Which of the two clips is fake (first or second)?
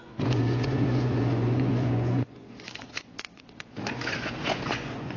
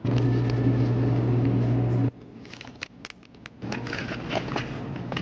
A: first